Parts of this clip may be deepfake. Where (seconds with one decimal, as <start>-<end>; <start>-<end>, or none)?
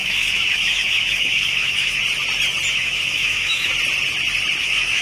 0.0-2.0; 2.7-3.7; 4.6-5.0